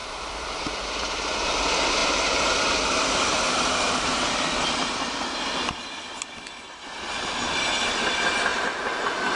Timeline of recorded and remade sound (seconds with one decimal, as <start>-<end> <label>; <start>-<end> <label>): 0.0-9.3 recorded